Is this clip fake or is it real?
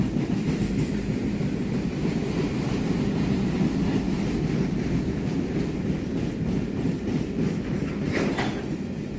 real